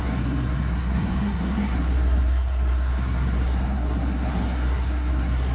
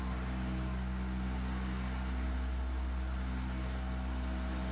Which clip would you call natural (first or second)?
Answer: second